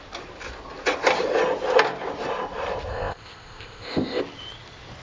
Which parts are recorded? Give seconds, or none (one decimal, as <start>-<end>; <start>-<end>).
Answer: 0.0-2.9; 4.2-5.0